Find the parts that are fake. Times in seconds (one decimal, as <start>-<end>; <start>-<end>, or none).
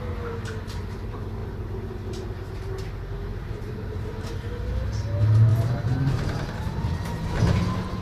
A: 3.3-4.3; 5.5-7.5